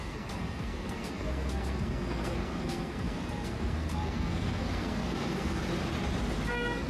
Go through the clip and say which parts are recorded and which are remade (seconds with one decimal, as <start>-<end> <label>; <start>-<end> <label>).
0.0-5.6 remade; 5.6-6.5 recorded; 6.5-6.9 remade